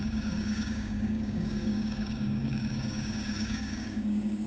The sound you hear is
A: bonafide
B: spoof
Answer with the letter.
B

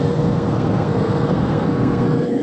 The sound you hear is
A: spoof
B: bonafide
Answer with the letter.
A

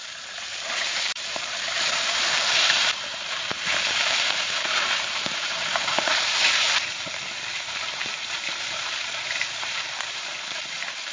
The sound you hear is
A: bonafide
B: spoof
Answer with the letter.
B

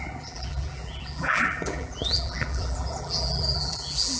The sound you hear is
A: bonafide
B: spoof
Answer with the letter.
B